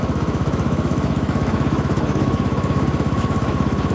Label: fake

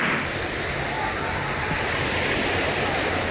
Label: real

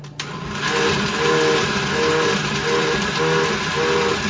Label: real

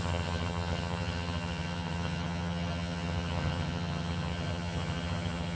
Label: fake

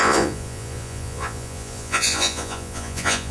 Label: fake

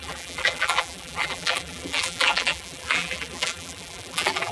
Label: fake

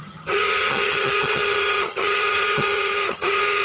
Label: fake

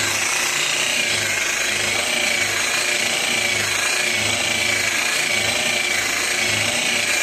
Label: real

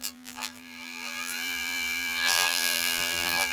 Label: fake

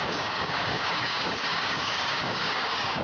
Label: fake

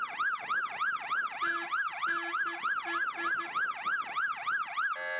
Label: real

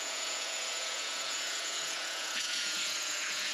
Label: fake